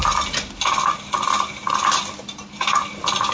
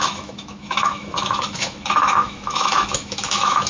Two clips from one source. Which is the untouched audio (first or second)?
first